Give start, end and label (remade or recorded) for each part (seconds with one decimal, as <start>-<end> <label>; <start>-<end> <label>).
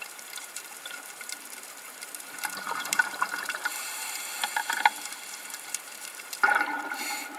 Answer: 0.0-4.0 remade; 4.0-4.5 recorded; 4.5-7.4 remade